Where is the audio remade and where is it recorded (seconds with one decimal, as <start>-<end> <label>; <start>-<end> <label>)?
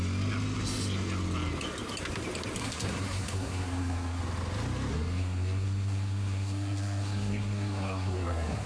0.0-2.6 recorded; 2.6-4.2 remade; 4.2-4.9 recorded; 4.9-8.7 remade